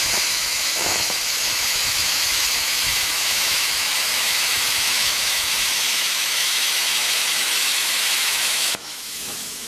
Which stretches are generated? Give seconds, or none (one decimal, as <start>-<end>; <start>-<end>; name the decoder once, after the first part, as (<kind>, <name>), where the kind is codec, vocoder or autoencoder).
0.0-9.7 (autoencoder, DAC-VAE)

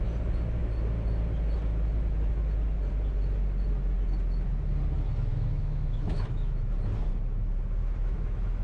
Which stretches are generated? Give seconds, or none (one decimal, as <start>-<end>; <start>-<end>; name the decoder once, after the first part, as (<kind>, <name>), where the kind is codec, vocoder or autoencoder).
5.3-6.7 (autoencoder, DAC-VAE); 7.8-8.6